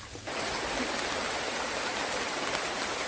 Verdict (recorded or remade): recorded